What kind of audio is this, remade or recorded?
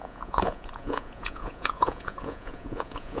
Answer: remade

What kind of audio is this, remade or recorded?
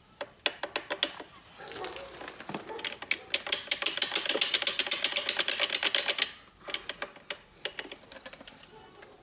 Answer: recorded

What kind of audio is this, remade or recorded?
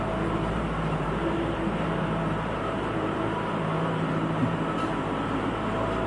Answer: remade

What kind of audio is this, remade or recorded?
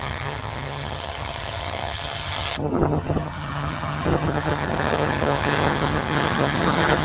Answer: remade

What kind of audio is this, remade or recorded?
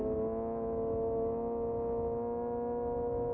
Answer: recorded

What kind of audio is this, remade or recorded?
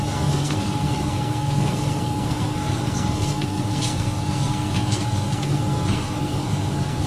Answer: remade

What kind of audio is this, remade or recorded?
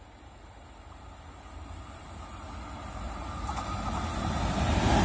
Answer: recorded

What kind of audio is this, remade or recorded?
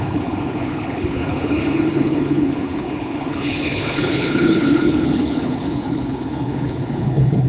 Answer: remade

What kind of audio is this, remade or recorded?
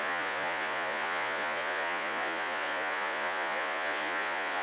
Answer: remade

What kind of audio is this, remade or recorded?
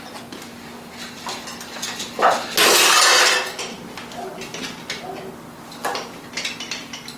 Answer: recorded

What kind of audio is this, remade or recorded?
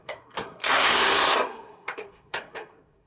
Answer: remade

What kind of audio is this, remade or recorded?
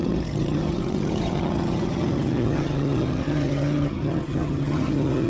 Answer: remade